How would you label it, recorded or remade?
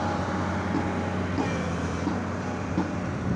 recorded